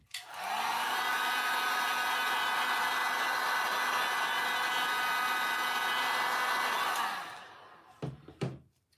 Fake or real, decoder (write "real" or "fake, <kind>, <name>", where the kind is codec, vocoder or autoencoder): real